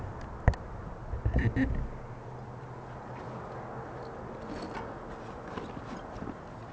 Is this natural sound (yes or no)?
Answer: yes